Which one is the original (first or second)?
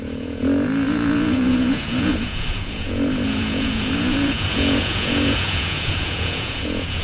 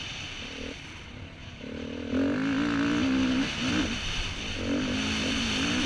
second